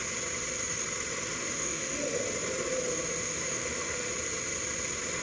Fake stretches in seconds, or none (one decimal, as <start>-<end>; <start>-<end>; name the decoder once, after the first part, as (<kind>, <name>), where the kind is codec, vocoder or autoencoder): 1.4-2.2 (autoencoder, DAC-VAE); 3.2-4.1